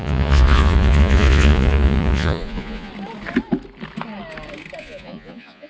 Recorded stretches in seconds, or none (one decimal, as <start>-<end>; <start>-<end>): 2.9-4.8